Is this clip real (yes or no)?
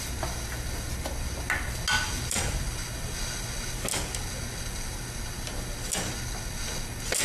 yes